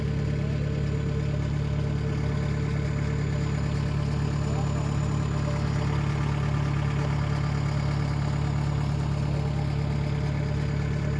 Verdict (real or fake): real